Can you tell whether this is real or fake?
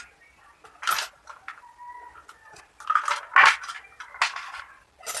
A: real